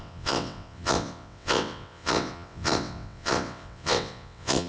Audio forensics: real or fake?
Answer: fake